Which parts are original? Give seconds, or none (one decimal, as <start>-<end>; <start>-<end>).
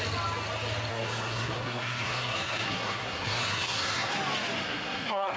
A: 0.0-0.9; 4.1-4.6